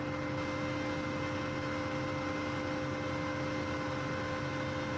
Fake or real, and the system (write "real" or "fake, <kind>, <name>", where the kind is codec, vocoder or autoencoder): real